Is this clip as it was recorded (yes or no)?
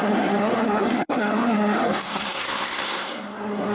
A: no